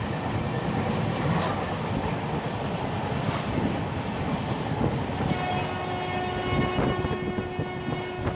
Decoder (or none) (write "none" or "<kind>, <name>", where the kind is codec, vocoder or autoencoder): none